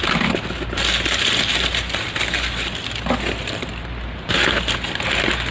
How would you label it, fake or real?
real